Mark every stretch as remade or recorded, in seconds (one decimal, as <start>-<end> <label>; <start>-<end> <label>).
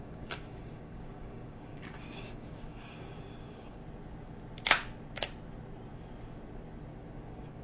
0.0-3.8 remade; 3.8-7.6 recorded